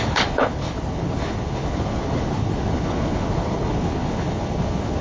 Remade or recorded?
remade